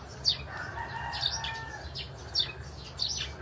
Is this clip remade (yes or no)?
no